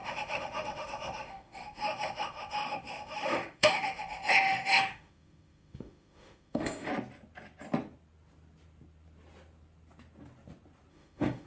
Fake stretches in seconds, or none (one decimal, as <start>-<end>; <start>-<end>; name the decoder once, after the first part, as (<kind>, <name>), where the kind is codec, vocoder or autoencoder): 0.0-6.9 (autoencoder, DAC-VAE); 10.9-11.5